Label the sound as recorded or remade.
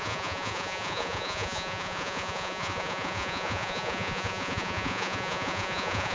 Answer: remade